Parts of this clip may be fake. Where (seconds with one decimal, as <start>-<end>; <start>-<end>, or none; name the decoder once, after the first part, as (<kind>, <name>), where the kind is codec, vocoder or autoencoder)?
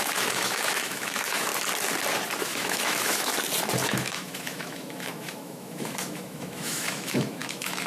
0.0-1.5 (autoencoder, DAC-VAE); 2.4-3.3; 3.9-7.9